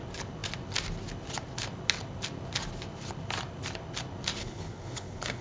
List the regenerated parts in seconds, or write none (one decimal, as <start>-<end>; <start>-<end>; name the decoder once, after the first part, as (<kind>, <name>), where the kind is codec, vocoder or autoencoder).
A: 4.4-5.4 (codec, HILCodec)